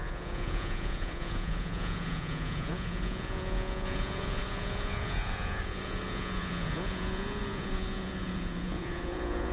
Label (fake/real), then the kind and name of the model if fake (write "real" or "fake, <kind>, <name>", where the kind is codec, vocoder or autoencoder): fake, vocoder, Vocos